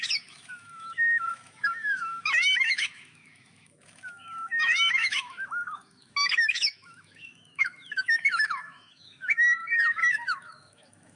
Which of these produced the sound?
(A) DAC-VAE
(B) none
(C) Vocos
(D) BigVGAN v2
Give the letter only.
A